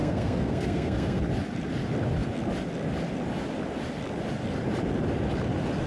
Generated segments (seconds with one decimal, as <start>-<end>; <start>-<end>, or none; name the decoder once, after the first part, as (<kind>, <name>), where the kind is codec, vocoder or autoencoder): 0.0-1.2 (codec, SNAC)